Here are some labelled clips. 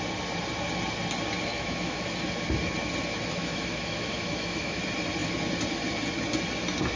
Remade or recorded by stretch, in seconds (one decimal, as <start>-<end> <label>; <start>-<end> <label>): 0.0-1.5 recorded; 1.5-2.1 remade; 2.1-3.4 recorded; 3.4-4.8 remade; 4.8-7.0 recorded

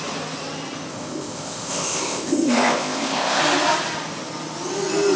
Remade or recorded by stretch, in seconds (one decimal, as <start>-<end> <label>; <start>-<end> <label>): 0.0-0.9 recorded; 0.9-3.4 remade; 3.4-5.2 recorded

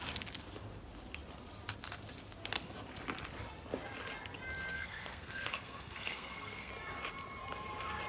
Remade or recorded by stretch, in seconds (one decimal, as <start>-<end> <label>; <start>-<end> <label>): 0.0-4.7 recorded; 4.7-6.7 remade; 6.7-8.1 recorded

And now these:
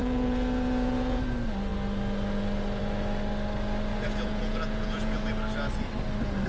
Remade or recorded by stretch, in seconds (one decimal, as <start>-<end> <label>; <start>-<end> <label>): 0.0-1.2 remade; 1.2-3.9 recorded; 3.9-5.3 remade; 5.3-6.5 recorded